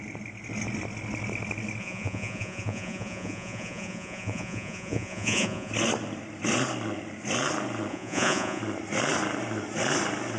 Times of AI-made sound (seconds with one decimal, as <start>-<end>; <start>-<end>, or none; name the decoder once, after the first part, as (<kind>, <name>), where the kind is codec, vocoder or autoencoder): 1.8-5.7 (vocoder, Vocos); 7.9-8.6

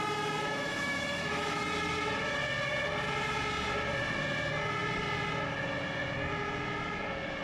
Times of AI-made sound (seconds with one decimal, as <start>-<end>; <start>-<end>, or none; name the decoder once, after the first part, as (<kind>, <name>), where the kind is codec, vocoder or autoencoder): 0.4-1.6 (autoencoder, DAC-VAE)

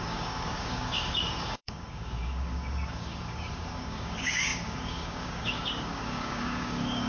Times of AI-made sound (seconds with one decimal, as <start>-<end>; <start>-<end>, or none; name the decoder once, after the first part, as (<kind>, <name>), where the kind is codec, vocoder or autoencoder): 0.0-7.1 (codec, DAC)

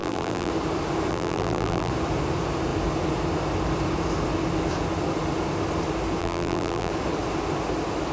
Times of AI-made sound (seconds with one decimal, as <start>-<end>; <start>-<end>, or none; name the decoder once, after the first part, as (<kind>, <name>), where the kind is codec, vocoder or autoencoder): 0.0-0.5 (vocoder, BigVGAN v2); 1.1-1.9; 6.2-6.9

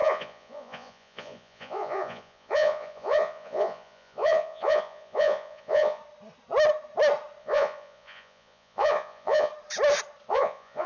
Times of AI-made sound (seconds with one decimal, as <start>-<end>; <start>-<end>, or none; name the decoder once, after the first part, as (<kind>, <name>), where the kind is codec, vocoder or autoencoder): 0.0-6.0 (vocoder, Vocos); 7.4-9.5; 10.3-10.9

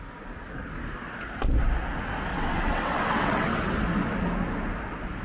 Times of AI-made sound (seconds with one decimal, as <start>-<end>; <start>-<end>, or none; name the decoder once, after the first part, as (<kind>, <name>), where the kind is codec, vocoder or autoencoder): 2.3-3.5 (vocoder, WaveNeXt)

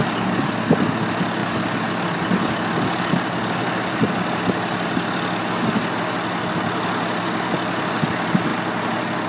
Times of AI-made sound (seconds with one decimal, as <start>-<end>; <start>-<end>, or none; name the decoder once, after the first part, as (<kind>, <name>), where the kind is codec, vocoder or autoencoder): none

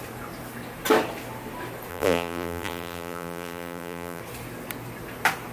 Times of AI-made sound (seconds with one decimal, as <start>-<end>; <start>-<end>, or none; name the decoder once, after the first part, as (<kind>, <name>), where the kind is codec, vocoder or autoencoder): 1.9-4.2 (vocoder, BigVGAN v2)